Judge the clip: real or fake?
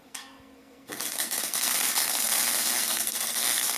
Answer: fake